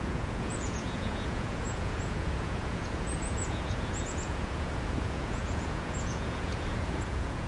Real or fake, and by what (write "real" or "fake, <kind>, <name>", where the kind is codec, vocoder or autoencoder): fake, vocoder, Vocos